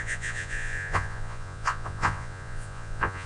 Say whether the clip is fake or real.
fake